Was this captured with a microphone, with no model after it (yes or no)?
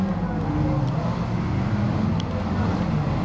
yes